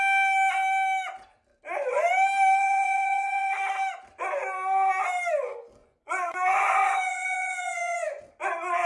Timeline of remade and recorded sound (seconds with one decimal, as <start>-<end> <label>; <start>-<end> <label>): 0.0-2.6 recorded; 2.6-3.7 remade; 3.7-5.8 recorded; 5.8-8.2 remade; 8.2-8.9 recorded